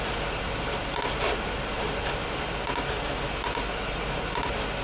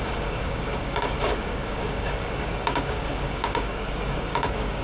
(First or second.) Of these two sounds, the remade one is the second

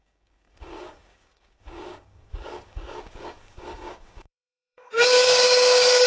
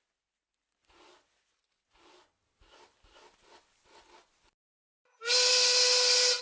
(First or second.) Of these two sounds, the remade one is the first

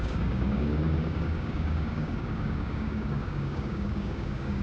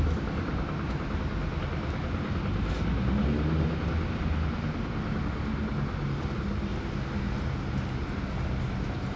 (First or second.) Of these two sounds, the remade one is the first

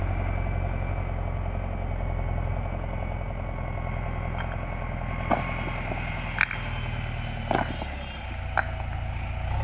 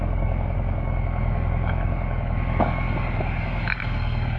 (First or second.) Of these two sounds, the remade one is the second